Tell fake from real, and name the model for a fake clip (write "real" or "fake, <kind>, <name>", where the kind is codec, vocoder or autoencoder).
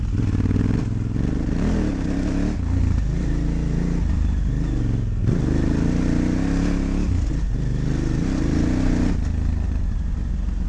real